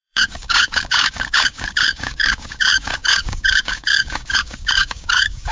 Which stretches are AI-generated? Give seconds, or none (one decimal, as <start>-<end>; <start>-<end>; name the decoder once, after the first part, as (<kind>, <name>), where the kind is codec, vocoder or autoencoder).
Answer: 0.0-5.5 (codec, DAC)